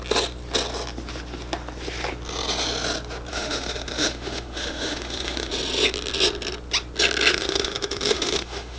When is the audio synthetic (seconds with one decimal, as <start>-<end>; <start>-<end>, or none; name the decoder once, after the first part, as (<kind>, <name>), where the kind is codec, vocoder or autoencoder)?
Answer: 3.3-5.5 (autoencoder, DAC-VAE); 7.3-8.8